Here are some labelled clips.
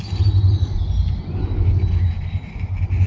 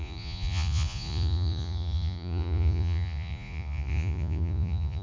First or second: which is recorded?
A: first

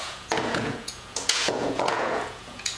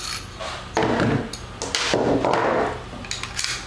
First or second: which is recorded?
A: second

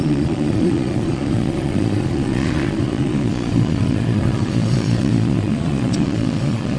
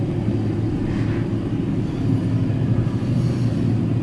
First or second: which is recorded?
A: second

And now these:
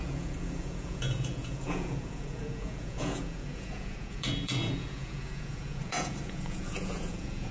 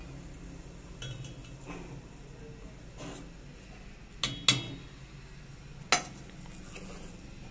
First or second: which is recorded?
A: second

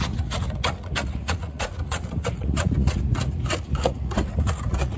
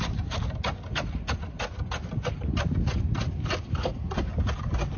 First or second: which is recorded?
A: second